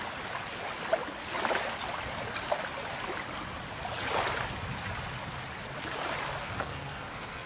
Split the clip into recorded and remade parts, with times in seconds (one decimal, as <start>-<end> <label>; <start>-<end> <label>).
0.0-6.4 recorded; 6.4-7.5 remade